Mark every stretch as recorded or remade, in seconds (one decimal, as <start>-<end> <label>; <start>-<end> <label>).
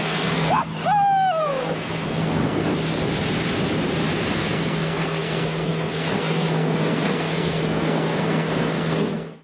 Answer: 0.0-0.7 remade; 0.7-1.4 recorded; 1.4-2.7 remade; 2.7-4.2 recorded; 4.2-9.4 remade